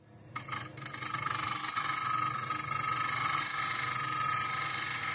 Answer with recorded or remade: recorded